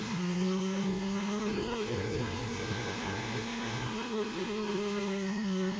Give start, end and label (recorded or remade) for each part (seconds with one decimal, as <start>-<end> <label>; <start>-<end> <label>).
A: 0.0-5.8 remade